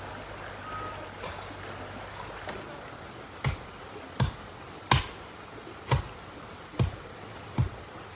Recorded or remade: recorded